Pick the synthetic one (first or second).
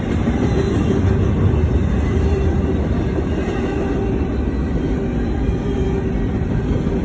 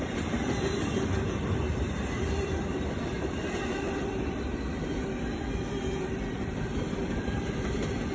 second